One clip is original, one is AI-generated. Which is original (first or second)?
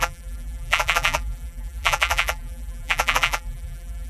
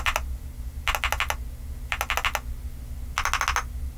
second